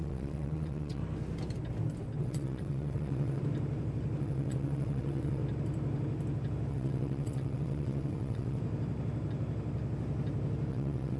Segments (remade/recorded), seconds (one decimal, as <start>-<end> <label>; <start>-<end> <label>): 0.0-1.0 remade; 1.0-2.2 recorded; 2.2-3.4 remade; 3.4-4.2 recorded; 4.2-5.4 remade; 5.4-6.7 recorded; 6.7-8.6 remade; 8.6-10.7 recorded; 10.7-11.2 remade